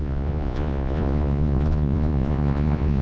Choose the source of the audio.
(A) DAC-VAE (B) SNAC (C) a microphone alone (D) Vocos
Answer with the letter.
D